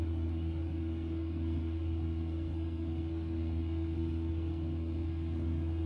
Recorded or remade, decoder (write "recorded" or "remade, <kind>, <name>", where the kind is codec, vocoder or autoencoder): remade, codec, SNAC